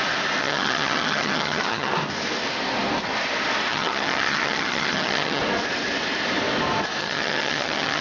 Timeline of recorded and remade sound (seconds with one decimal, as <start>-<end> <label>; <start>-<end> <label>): 0.0-0.4 recorded; 0.4-1.9 remade; 1.9-3.7 recorded; 3.7-5.4 remade; 5.4-7.0 recorded; 7.0-8.0 remade